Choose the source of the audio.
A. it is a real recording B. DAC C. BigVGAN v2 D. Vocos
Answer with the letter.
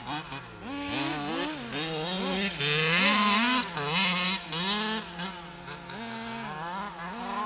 A